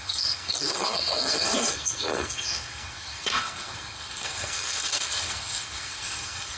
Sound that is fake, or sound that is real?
fake